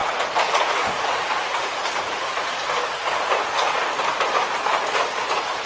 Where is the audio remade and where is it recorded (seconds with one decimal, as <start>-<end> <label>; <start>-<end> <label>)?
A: 0.0-3.8 remade; 3.8-4.9 recorded; 4.9-5.7 remade